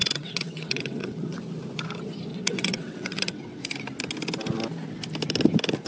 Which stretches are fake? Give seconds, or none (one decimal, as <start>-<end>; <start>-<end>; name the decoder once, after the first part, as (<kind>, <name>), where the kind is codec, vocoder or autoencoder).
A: 0.0-1.4 (vocoder, WaveNeXt); 2.3-3.6